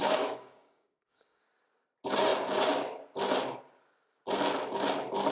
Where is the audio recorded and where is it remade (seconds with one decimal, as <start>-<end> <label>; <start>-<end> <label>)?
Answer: 0.0-1.4 remade; 1.4-5.3 recorded